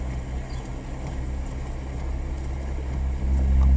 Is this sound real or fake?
real